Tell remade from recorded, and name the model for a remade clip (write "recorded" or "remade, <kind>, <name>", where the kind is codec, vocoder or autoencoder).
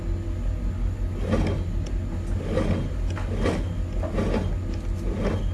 recorded